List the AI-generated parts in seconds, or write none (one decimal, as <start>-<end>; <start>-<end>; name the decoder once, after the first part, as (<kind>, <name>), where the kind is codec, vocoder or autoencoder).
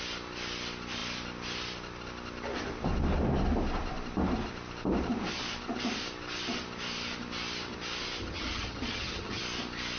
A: 8.2-9.4 (vocoder, HiFi-GAN)